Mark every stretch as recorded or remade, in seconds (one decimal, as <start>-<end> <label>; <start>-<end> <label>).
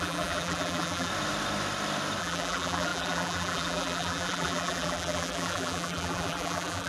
0.0-1.1 remade; 1.1-2.2 recorded; 2.2-6.9 remade